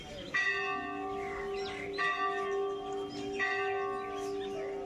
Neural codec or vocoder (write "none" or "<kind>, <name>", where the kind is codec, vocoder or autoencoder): none